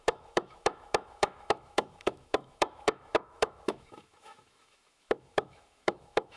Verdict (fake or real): fake